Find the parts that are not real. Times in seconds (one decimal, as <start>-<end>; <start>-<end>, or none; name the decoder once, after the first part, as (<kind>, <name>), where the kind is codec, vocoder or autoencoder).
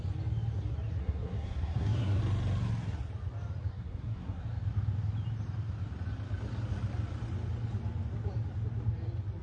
1.0-2.2 (codec, SNAC); 3.7-4.4